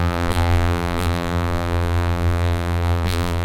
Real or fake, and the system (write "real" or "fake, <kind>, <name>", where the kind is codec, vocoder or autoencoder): fake, vocoder, BigVGAN v2